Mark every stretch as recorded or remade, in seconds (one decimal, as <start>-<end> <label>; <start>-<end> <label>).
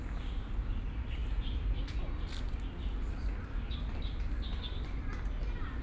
0.0-5.8 recorded